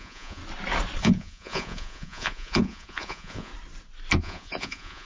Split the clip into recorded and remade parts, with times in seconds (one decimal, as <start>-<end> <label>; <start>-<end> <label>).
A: 0.0-0.4 remade; 0.4-1.0 recorded; 1.0-3.5 remade; 3.5-4.2 recorded; 4.2-5.1 remade